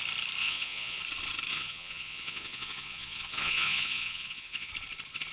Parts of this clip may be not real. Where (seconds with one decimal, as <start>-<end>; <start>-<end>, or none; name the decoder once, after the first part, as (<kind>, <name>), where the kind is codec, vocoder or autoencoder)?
0.4-1.0 (vocoder, Vocos); 1.5-4.7

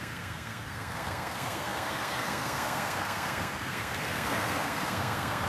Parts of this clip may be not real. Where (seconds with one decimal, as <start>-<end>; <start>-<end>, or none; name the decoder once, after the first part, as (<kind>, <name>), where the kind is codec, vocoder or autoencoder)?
0.0-5.5 (codec, SNAC)

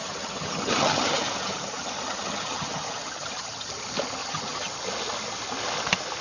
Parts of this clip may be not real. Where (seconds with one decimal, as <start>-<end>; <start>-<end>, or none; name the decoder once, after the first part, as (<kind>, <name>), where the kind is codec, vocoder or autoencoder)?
0.0-3.7 (vocoder, HiFi-GAN); 4.2-4.7

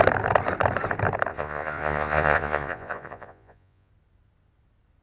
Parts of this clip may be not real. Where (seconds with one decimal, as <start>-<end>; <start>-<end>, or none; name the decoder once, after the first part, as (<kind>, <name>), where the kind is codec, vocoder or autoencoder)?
1.3-3.9 (vocoder, Vocos)

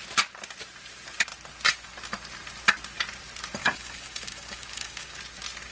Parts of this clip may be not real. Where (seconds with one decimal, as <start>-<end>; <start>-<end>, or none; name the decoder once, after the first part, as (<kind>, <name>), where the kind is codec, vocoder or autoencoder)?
3.6-5.2 (codec, DAC)

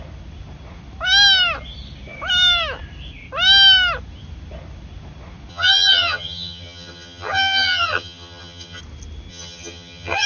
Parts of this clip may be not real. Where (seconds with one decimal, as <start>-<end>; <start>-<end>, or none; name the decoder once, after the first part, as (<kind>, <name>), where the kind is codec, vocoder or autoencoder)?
5.5-8.8 (vocoder, HiFi-GAN); 9.3-10.3

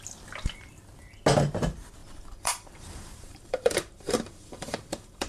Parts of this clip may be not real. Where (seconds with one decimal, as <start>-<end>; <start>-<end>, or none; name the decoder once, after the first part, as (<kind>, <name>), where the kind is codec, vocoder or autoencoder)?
2.0-5.3 (vocoder, BigVGAN v2)

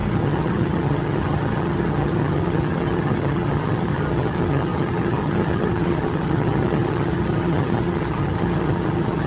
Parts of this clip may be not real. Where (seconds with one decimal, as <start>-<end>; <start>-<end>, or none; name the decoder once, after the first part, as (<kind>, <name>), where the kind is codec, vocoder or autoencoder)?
0.0-9.3 (vocoder, HiFi-GAN)